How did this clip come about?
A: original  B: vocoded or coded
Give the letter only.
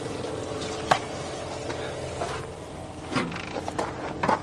A